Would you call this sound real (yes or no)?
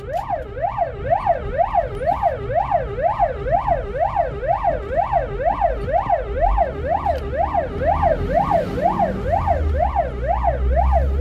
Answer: yes